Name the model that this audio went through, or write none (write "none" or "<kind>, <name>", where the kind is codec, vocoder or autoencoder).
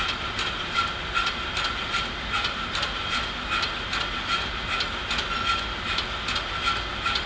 none